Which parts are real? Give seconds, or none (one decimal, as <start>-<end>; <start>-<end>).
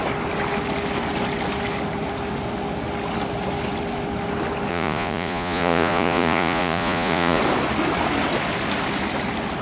0.0-4.7; 7.4-9.6